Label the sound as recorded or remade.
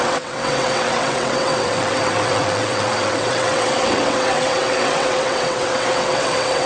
remade